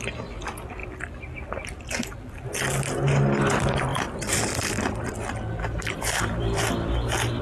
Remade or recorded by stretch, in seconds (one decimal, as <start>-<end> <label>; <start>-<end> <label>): 0.0-3.9 recorded; 3.9-7.4 remade